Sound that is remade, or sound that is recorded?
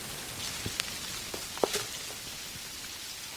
recorded